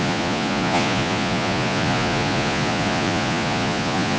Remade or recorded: remade